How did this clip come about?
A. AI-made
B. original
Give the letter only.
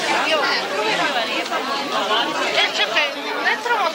B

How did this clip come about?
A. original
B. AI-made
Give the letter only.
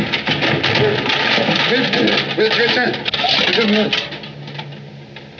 A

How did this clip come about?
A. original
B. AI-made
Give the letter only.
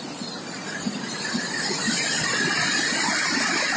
A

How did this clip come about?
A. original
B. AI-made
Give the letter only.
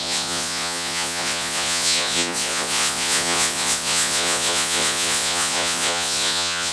B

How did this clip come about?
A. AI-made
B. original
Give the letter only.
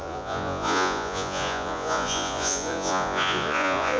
A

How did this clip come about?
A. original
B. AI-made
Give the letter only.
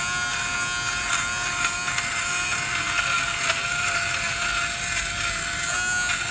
A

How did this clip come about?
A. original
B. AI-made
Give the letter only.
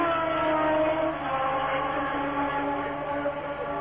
A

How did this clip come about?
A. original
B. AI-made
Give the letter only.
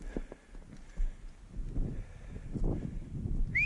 A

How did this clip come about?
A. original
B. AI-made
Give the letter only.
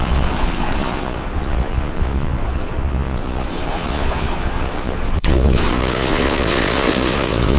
B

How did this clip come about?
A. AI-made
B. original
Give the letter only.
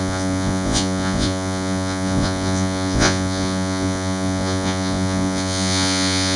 A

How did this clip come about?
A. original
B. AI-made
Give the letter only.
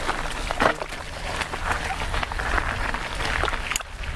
A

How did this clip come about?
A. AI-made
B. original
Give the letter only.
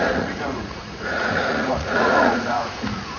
A